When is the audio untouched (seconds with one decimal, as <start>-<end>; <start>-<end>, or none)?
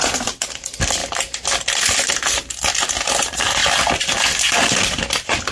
1.0-2.1